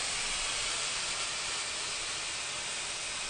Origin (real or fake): real